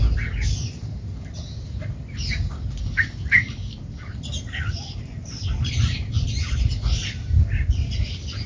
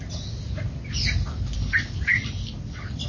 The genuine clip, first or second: second